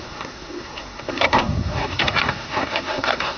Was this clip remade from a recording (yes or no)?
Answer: yes